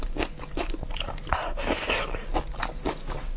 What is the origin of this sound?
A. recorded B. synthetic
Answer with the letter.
A